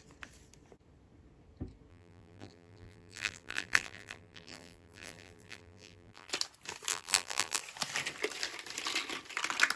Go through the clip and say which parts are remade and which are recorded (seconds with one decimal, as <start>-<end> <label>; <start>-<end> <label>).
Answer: 0.0-1.9 recorded; 1.9-6.3 remade; 6.3-6.9 recorded; 6.9-7.6 remade; 7.6-9.8 recorded